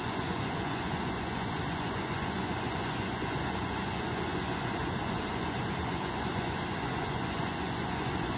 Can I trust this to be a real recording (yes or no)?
no